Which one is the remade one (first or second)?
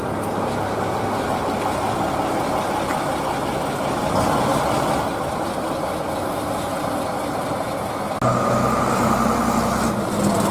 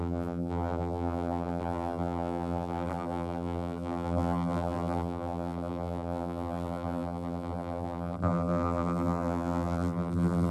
second